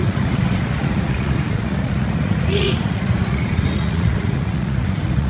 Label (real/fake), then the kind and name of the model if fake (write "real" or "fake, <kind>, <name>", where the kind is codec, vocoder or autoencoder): fake, vocoder, Vocos